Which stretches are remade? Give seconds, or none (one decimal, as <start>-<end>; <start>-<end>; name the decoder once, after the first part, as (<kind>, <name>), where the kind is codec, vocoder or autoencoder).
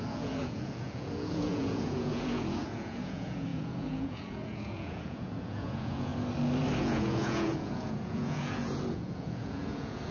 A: 0.0-6.1 (vocoder, Vocos); 6.8-10.1